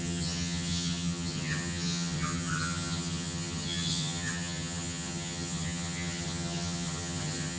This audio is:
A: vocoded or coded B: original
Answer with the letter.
A